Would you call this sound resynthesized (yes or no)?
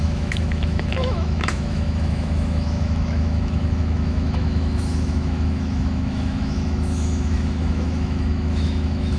yes